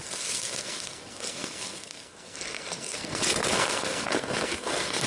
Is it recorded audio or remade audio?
remade